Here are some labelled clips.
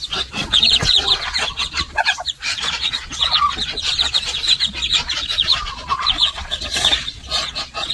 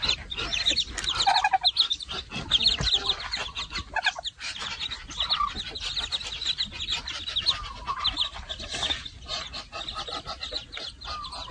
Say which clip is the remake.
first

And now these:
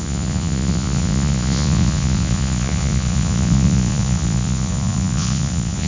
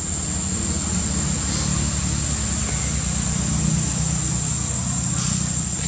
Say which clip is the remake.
first